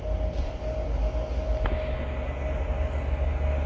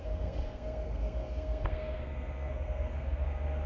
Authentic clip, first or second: first